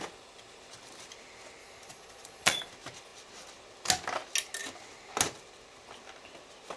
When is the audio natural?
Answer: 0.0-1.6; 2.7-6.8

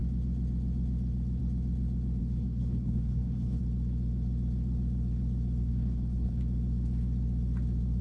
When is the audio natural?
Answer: 0.0-2.2; 3.6-5.6; 6.4-8.0

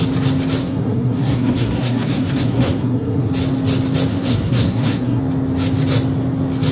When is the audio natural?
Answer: 0.0-0.6; 3.3-4.1; 5.2-6.7

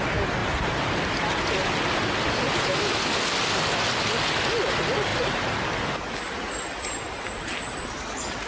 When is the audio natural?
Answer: 0.0-0.4; 1.0-5.1; 5.7-8.5

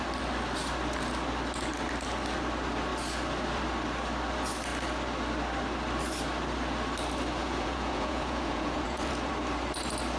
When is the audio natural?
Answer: 0.0-7.4; 9.3-10.2